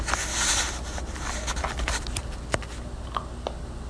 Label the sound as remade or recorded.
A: recorded